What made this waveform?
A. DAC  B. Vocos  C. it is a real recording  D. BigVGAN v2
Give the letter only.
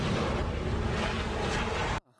C